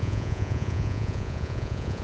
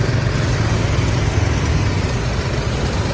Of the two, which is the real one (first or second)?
second